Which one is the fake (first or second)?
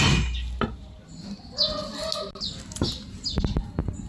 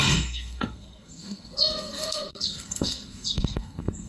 second